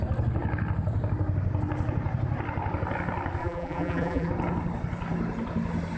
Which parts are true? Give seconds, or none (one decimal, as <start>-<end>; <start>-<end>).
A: 0.0-3.4; 4.3-6.0